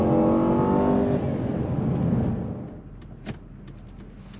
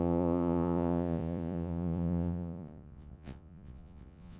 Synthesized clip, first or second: second